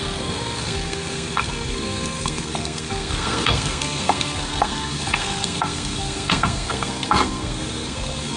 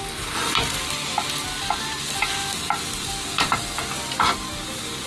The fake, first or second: first